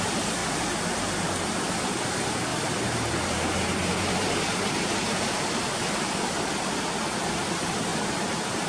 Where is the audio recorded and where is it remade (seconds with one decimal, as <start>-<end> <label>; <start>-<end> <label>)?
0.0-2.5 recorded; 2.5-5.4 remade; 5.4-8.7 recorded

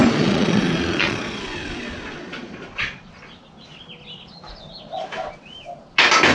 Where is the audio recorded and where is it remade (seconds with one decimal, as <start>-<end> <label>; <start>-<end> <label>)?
0.0-1.4 remade; 1.4-2.3 recorded; 2.3-3.1 remade; 3.1-6.3 recorded

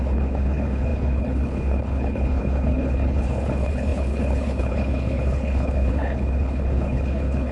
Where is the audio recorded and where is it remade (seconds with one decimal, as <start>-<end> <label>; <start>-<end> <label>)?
0.0-7.5 remade

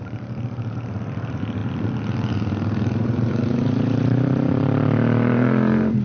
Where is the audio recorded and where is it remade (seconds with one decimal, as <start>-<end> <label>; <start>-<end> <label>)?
0.0-1.6 remade; 1.6-2.3 recorded; 2.3-6.0 remade

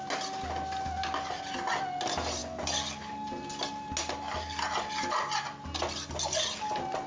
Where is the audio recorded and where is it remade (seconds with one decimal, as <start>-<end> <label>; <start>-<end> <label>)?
0.0-7.1 recorded